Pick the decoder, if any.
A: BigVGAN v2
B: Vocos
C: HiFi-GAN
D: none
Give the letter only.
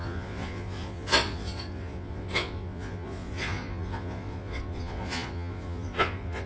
B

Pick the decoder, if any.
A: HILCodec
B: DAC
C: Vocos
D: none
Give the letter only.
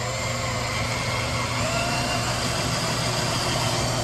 D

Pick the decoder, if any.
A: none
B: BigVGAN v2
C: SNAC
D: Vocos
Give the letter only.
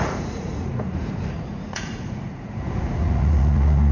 D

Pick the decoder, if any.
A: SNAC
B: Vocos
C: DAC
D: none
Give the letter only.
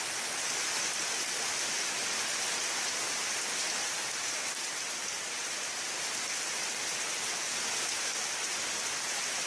D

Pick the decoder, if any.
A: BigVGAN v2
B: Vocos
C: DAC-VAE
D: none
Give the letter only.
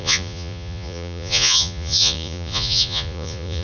B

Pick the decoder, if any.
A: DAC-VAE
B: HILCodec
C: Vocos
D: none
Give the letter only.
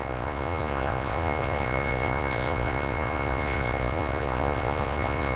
C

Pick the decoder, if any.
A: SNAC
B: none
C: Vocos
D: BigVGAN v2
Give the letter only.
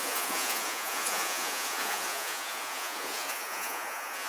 C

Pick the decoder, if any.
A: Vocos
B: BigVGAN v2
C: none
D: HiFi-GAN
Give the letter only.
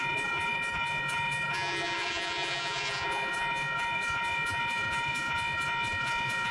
A